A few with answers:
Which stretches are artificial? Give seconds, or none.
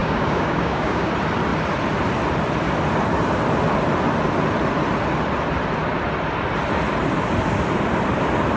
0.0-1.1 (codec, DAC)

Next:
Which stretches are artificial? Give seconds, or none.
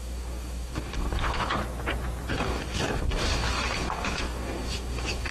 0.0-1.6 (codec, DAC); 2.3-5.3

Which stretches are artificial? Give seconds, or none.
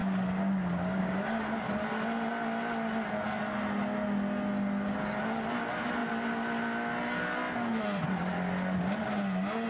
0.0-1.4 (codec, DAC)